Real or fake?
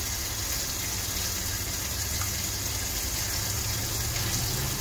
real